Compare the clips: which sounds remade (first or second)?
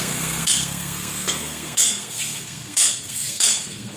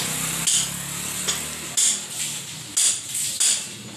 first